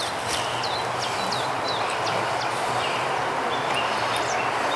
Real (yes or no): yes